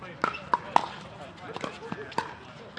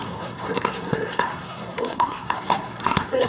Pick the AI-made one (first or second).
second